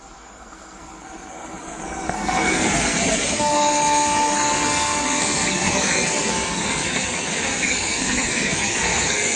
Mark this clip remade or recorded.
remade